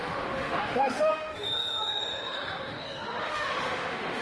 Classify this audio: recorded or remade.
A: remade